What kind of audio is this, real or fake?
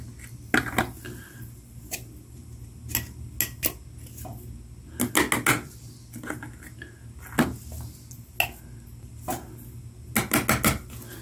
real